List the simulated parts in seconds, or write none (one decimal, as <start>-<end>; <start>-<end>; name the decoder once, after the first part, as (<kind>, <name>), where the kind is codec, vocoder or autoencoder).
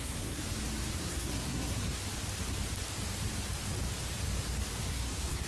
0.0-0.4 (codec, SNAC); 1.0-2.0; 4.9-5.5